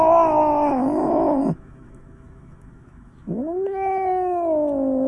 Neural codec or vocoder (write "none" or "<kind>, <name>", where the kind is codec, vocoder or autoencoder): autoencoder, DAC-VAE